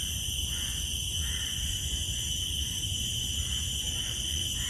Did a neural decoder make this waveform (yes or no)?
yes